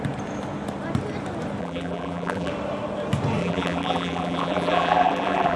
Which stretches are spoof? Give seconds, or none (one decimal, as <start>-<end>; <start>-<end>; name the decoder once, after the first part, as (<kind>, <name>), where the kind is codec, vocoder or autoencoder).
1.6-2.5 (vocoder, BigVGAN v2); 3.4-5.6